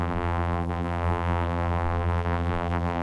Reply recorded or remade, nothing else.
remade